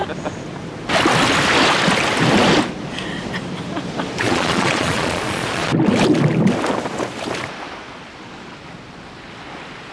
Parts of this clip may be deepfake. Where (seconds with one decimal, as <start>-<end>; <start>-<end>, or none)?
4.2-5.7